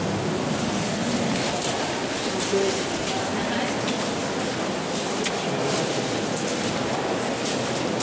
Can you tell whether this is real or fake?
real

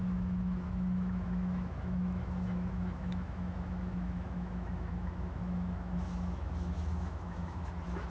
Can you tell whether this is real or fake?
fake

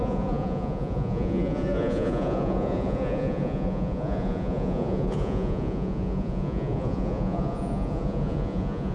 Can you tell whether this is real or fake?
fake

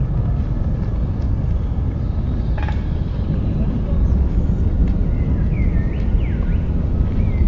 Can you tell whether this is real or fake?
real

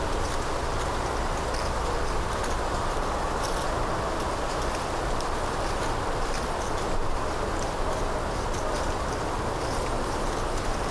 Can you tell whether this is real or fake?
real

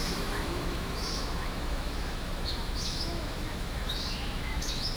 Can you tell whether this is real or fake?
fake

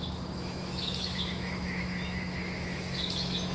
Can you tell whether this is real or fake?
fake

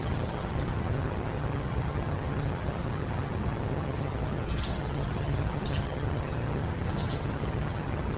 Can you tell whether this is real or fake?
fake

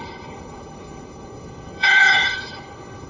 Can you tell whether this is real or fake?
fake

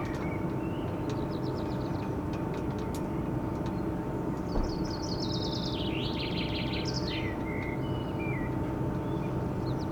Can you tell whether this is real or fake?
real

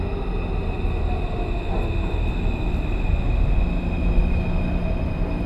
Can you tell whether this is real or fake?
real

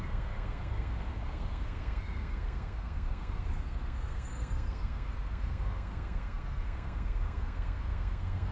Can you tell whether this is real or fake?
fake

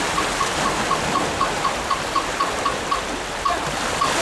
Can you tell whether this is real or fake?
real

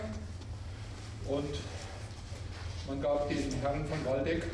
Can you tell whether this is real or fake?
real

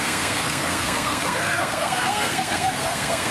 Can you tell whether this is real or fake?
fake